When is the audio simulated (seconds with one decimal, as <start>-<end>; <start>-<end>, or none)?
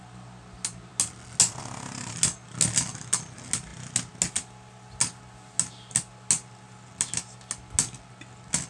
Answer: none